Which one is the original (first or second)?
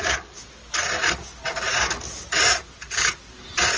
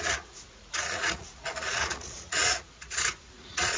first